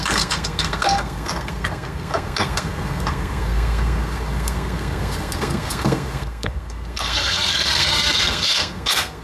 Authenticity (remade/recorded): remade